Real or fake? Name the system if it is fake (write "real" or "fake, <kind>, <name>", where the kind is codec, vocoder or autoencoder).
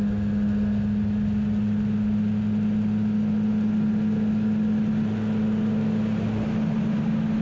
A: real